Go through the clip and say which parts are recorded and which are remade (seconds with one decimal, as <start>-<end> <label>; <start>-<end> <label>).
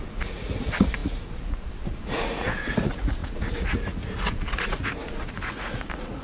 0.0-6.2 remade